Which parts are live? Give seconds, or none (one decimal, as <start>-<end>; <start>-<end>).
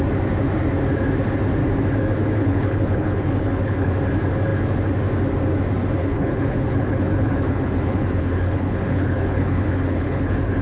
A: 0.0-2.4; 3.9-6.0